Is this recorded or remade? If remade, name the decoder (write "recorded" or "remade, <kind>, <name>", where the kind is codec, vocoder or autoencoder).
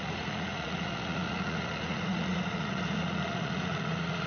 remade, vocoder, Vocos